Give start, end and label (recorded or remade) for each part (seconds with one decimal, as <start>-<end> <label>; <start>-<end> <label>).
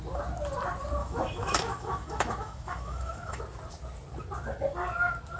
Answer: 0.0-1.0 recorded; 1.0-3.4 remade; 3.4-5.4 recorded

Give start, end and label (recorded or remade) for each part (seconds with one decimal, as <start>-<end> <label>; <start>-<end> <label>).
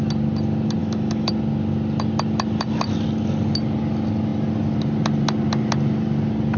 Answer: 0.0-0.8 recorded; 0.8-1.3 remade; 1.3-6.6 recorded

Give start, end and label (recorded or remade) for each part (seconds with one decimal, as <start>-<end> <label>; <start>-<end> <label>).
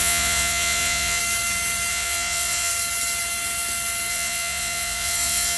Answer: 0.0-1.2 remade; 1.2-1.9 recorded; 1.9-2.7 remade; 2.7-4.1 recorded; 4.1-5.6 remade